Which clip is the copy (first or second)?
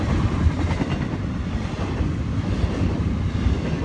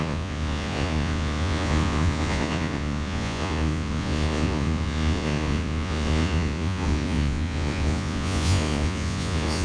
second